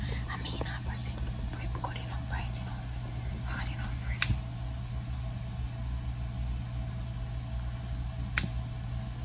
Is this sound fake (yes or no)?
no